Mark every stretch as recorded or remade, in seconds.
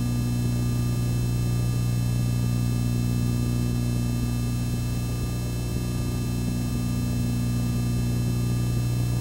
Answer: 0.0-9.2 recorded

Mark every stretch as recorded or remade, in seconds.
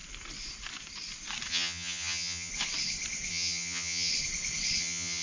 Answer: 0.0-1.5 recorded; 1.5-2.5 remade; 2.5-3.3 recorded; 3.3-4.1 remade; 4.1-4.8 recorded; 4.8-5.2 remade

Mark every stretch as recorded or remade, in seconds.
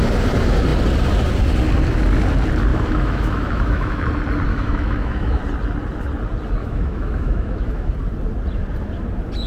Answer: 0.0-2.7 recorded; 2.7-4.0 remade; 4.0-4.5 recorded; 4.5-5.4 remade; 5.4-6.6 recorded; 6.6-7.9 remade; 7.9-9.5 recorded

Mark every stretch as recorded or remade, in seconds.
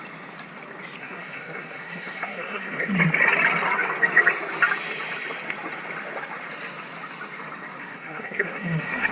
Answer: 0.0-1.0 recorded; 1.0-2.9 remade; 2.9-7.8 recorded; 7.8-9.1 remade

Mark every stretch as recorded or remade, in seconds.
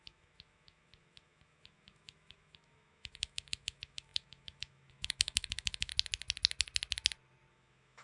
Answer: 0.0-5.9 remade; 5.9-7.5 recorded; 7.5-8.0 remade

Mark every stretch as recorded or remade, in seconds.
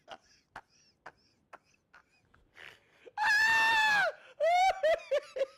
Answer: 0.0-2.0 recorded; 2.0-5.6 remade